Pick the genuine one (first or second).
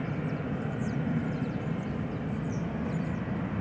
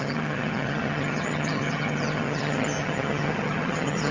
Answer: first